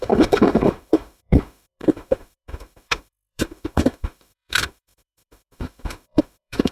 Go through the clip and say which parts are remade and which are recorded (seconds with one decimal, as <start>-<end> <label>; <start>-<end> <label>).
0.0-6.7 remade